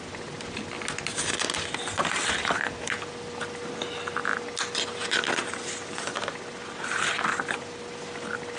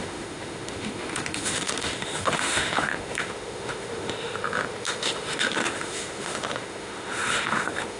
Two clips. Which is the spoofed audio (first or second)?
second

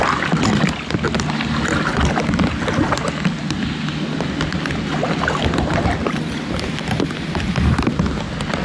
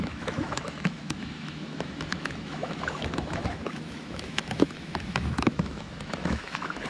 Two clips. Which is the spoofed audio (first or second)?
second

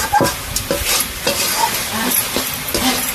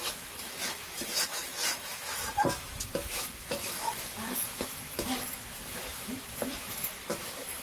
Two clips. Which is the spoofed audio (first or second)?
second